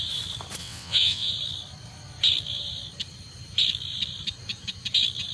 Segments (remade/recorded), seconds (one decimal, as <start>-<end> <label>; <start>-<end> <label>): 0.0-0.6 recorded; 0.6-1.3 remade; 1.3-5.3 recorded